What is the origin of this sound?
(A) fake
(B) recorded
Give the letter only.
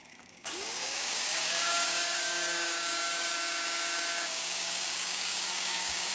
A